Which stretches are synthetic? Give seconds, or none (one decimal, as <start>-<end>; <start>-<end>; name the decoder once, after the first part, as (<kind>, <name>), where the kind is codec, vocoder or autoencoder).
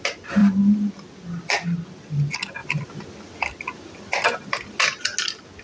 none